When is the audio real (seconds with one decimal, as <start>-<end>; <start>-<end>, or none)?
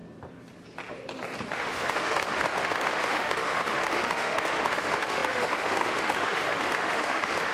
0.0-1.5